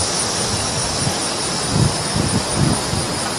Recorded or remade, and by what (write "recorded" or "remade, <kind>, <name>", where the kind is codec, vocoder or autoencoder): recorded